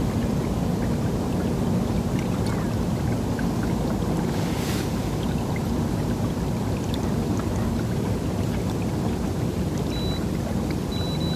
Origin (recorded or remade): recorded